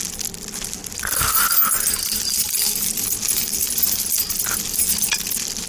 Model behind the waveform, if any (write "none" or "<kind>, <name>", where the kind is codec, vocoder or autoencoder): none